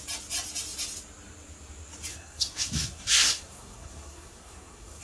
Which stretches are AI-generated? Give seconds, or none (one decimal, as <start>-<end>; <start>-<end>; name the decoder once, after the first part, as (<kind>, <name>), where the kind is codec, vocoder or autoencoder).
2.1-5.0 (codec, SNAC)

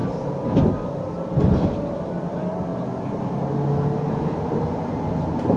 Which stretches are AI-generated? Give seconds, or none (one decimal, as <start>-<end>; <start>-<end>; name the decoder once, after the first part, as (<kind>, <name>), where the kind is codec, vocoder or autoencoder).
none

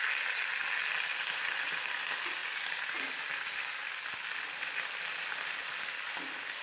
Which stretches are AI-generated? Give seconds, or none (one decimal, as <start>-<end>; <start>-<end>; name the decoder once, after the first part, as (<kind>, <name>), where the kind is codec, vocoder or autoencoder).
1.1-1.8 (vocoder, BigVGAN v2)

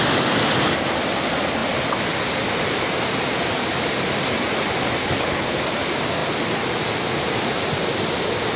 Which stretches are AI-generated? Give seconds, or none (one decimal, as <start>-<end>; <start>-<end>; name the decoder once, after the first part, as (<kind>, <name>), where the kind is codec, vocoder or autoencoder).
5.0-5.6 (codec, HILCodec)

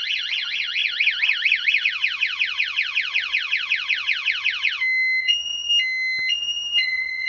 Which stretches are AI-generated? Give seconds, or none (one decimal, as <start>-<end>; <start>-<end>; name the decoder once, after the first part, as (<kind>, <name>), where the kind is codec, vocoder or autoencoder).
0.0-0.8 (vocoder, Vocos); 5.2-5.7; 6.3-7.3